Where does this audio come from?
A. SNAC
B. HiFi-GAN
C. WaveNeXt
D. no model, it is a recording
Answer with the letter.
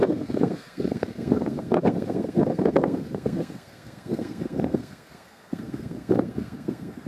A